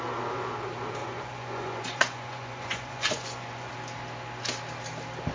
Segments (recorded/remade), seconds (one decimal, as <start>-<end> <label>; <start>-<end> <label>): 0.0-1.0 recorded; 1.0-3.7 remade; 3.7-5.3 recorded